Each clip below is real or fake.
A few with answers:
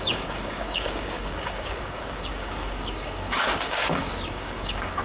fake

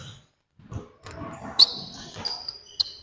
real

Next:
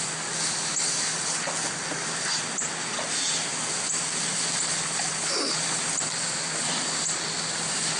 real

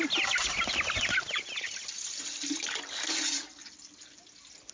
real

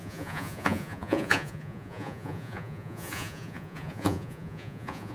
fake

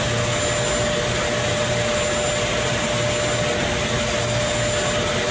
real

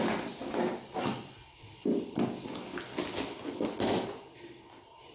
real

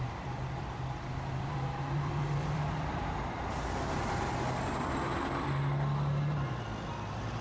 fake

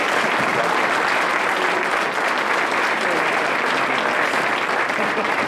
real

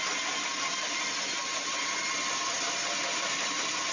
fake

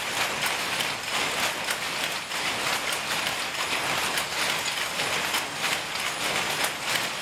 real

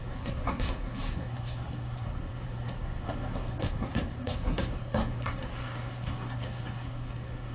fake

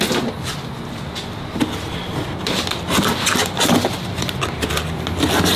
real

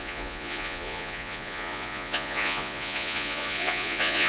fake